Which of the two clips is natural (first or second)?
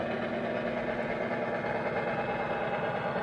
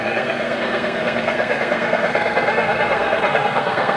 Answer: first